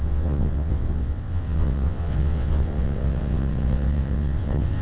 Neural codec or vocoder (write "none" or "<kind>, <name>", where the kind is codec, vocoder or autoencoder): vocoder, WaveNeXt